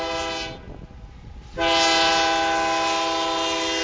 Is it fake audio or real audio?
real